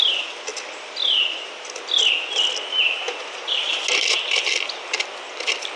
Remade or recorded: recorded